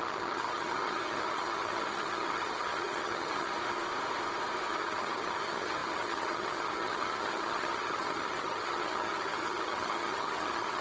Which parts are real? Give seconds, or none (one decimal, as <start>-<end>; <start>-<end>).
3.5-4.7